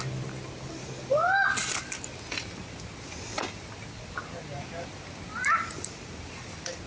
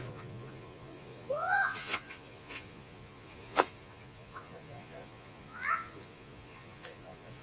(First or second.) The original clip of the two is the first